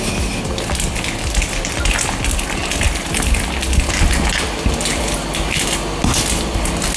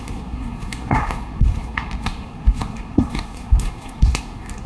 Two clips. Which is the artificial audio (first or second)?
second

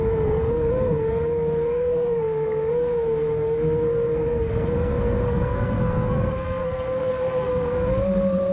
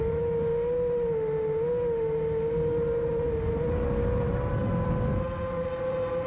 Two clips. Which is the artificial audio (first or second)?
first